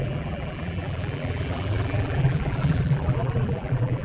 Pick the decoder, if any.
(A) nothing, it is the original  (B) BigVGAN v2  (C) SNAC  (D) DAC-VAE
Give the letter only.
B